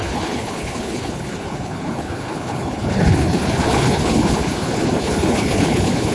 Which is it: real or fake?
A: fake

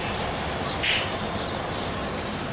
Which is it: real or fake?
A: real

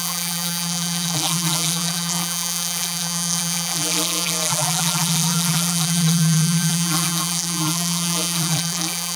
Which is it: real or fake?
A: fake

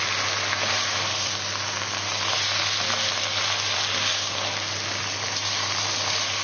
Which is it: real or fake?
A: real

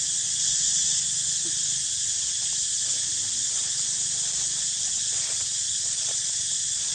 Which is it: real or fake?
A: real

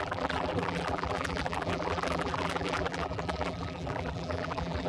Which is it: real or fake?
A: fake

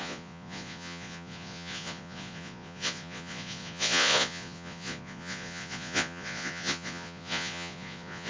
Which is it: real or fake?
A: fake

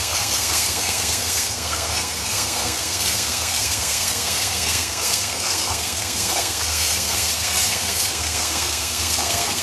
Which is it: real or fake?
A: fake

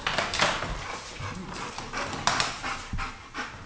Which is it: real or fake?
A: real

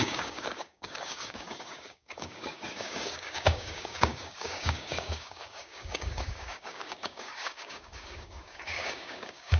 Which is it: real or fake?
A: fake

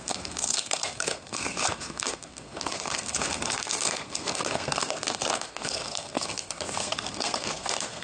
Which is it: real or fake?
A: fake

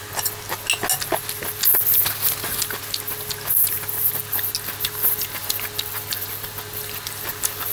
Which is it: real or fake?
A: real